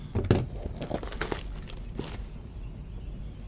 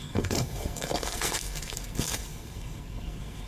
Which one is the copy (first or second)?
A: second